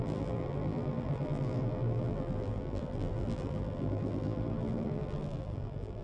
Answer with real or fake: fake